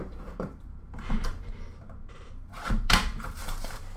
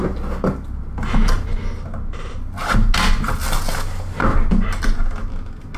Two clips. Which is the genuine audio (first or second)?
second